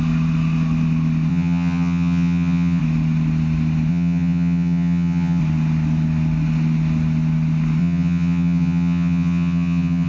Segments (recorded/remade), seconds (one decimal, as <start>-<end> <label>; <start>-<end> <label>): 0.0-1.3 recorded; 1.3-2.8 remade; 2.8-3.9 recorded; 3.9-5.4 remade; 5.4-7.8 recorded; 7.8-10.1 remade